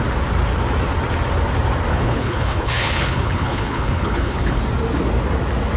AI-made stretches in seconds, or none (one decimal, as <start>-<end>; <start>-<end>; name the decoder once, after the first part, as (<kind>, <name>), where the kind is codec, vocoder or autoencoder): 1.9-4.6 (codec, HILCodec)